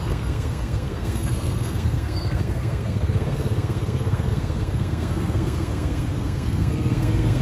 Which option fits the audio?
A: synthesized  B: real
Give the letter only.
A